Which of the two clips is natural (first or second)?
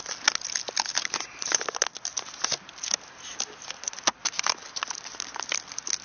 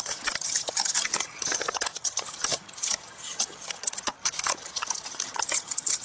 first